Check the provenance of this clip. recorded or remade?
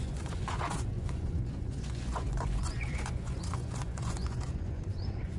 remade